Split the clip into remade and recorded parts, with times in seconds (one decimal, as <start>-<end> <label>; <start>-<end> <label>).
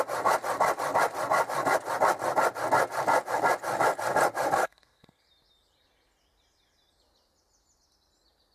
0.0-4.6 recorded; 4.6-5.2 remade; 5.2-8.5 recorded